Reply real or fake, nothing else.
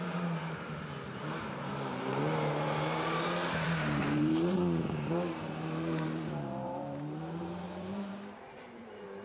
fake